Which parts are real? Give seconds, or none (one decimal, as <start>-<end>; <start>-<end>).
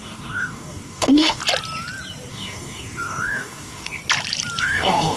1.4-2.3; 4.0-4.6